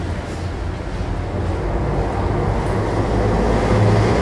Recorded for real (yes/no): yes